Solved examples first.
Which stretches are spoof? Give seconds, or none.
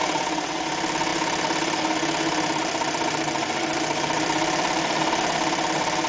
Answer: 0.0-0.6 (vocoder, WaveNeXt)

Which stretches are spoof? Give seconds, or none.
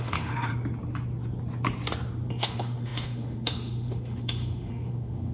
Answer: 0.0-0.5 (autoencoder, DAC-VAE); 2.3-5.3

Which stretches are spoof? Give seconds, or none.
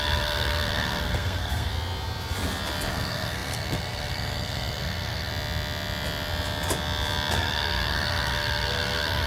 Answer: 0.0-1.7 (codec, SNAC); 2.9-5.3; 7.3-9.3